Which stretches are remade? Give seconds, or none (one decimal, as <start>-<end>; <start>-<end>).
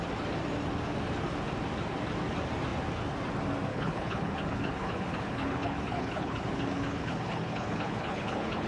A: 3.7-8.7